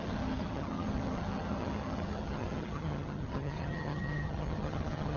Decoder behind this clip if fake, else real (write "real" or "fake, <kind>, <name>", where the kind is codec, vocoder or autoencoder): fake, vocoder, HiFi-GAN